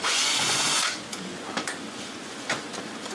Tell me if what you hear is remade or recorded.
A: remade